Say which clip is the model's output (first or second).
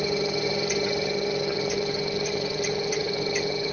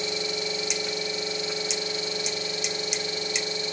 first